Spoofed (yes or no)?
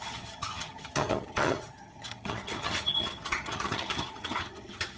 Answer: yes